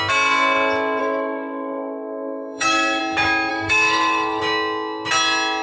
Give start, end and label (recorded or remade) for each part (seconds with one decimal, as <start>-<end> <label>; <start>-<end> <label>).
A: 0.0-1.0 recorded; 1.0-3.0 remade; 3.0-3.5 recorded; 3.5-4.4 remade; 4.4-5.6 recorded